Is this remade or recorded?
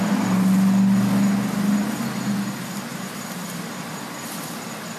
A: recorded